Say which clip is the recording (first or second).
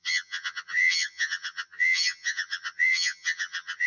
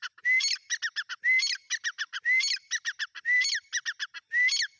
second